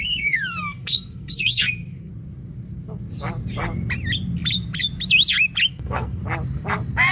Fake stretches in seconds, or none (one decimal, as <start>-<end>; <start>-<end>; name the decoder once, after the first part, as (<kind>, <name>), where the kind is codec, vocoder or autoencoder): 0.0-2.1 (codec, SNAC); 5.7-6.2